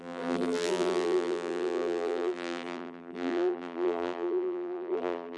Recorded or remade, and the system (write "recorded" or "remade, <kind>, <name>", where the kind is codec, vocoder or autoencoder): remade, vocoder, BigVGAN v2